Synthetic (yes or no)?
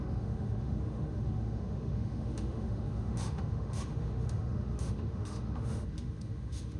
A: yes